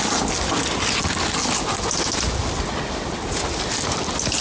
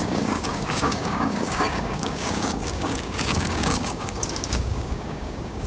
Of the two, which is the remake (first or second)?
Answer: second